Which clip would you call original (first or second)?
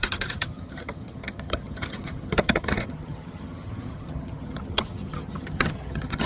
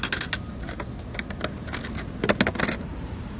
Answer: second